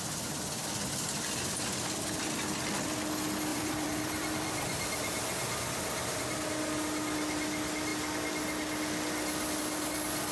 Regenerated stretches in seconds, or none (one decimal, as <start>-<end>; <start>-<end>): 3.5-6.4